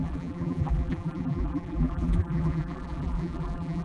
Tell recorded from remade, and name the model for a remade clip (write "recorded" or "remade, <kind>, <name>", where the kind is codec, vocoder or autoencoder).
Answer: remade, vocoder, BigVGAN v2